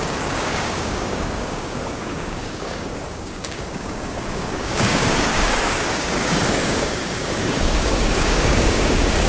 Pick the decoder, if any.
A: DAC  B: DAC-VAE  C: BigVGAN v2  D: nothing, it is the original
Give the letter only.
A